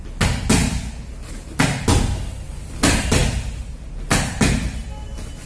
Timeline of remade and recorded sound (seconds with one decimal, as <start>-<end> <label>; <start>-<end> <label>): 0.0-5.5 recorded